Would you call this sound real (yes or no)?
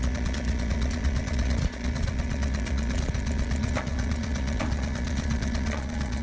no